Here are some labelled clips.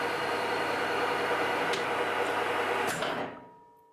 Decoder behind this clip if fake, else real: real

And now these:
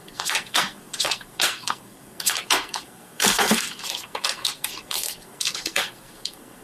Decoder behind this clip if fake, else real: fake, codec, SNAC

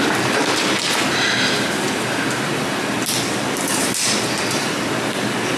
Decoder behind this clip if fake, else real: real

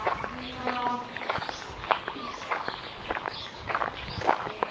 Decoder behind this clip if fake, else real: fake, codec, DAC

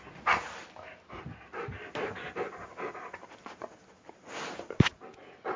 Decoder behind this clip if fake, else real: real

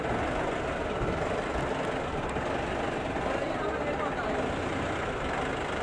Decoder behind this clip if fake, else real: real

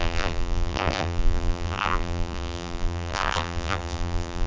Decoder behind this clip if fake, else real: fake, vocoder, BigVGAN v2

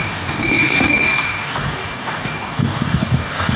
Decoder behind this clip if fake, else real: fake, codec, DAC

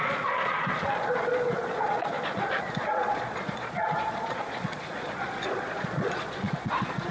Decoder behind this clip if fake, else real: fake, vocoder, Vocos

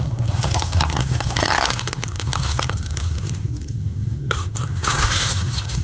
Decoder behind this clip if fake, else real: fake, codec, SNAC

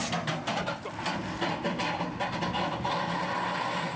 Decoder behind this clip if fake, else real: real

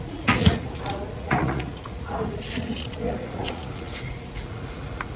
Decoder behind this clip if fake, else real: fake, vocoder, Vocos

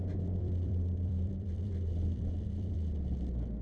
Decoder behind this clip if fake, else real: fake, vocoder, BigVGAN v2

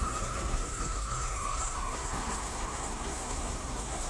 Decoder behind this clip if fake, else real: fake, codec, SNAC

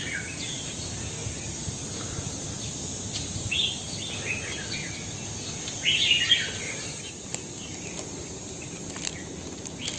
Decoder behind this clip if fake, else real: real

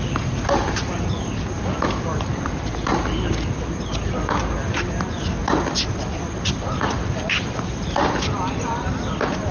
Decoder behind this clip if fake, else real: real